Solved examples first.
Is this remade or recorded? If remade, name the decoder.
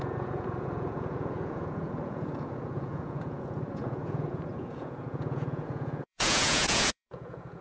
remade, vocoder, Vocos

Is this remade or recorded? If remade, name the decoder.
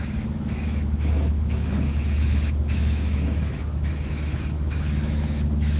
remade, autoencoder, DAC-VAE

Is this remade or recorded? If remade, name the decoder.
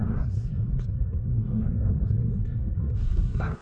remade, codec, SNAC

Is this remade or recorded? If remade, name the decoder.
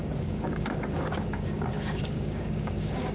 remade, codec, DAC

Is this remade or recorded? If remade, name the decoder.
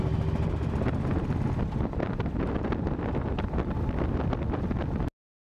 recorded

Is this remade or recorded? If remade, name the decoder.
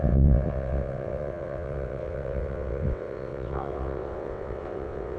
remade, vocoder, WaveNeXt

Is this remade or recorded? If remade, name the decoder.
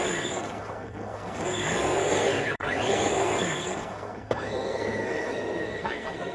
remade, codec, SNAC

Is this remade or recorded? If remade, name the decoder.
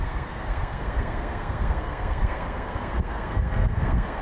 remade, codec, SNAC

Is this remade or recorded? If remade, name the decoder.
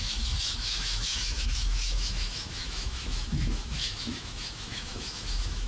remade, autoencoder, DAC-VAE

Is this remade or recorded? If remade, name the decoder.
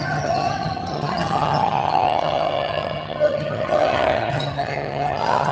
remade, vocoder, HiFi-GAN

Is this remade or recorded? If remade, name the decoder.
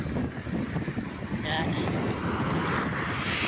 recorded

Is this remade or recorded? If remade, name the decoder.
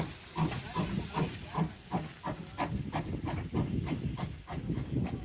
recorded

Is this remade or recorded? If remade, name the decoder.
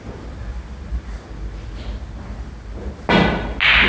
recorded